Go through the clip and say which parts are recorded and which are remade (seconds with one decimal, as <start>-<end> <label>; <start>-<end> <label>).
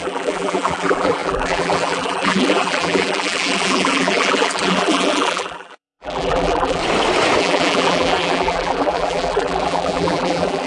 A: 0.0-6.8 remade; 6.8-7.4 recorded; 7.4-10.7 remade